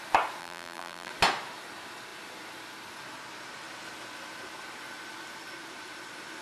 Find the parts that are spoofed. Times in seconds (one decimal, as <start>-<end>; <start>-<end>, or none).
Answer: 0.4-1.1

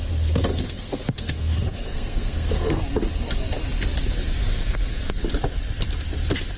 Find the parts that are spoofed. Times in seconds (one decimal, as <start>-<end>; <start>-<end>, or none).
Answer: 0.5-2.8; 4.4-5.2

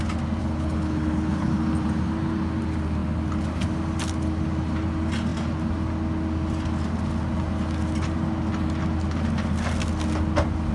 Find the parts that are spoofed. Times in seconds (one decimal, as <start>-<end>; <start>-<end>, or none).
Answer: 0.4-1.5

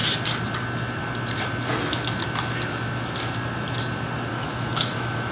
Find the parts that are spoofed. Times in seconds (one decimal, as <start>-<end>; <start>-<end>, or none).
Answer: 4.3-5.3